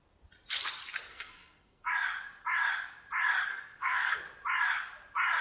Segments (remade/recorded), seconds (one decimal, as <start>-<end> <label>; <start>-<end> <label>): 0.0-1.1 recorded; 1.1-1.9 remade; 1.9-3.5 recorded; 3.5-4.2 remade; 4.2-5.4 recorded